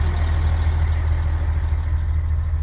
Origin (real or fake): real